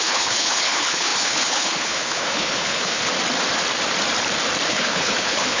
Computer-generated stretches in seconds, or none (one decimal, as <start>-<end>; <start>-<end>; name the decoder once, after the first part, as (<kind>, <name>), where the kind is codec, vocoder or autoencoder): 0.0-3.0 (codec, HILCodec); 4.7-5.6